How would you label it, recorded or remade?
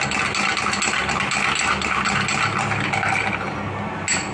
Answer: recorded